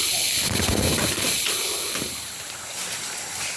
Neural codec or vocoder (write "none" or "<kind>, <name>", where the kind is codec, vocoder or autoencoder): none